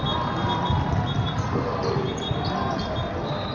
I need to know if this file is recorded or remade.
recorded